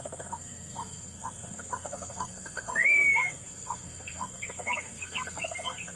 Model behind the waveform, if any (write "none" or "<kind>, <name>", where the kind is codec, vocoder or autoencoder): codec, SNAC